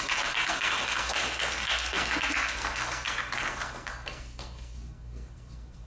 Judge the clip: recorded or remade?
remade